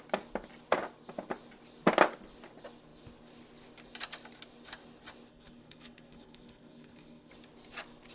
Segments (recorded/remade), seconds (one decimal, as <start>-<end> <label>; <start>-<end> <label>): 0.0-5.3 recorded; 5.3-7.3 remade; 7.3-8.1 recorded